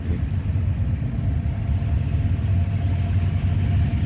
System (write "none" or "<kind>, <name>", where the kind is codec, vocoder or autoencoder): none